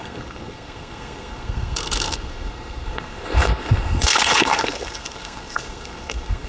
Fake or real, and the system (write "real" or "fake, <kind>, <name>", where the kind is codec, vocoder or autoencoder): fake, codec, SNAC